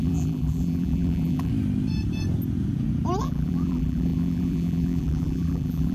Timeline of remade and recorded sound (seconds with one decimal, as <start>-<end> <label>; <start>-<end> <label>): 0.0-1.5 remade; 1.5-3.2 recorded; 3.2-5.9 remade